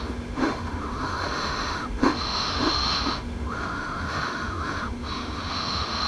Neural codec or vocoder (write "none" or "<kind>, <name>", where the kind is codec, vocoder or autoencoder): autoencoder, DAC-VAE